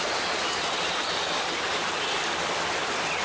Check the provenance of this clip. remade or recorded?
recorded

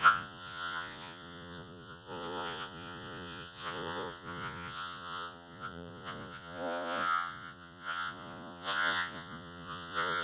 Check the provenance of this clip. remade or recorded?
remade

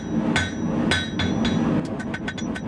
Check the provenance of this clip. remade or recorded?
recorded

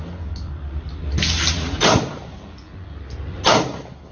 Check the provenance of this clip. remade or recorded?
recorded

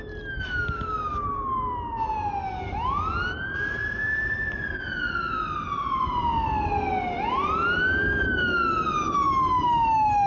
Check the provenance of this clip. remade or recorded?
recorded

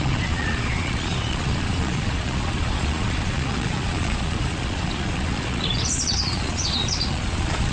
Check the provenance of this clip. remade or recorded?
remade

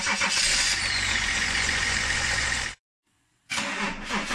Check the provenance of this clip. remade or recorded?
remade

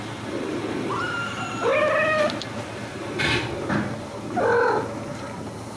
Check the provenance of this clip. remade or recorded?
recorded